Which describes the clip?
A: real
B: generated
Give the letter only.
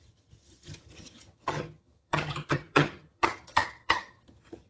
B